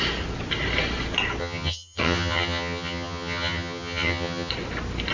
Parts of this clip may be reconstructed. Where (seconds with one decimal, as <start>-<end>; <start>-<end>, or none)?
1.4-4.5